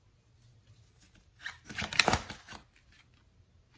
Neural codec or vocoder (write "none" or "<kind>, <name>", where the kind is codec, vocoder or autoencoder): none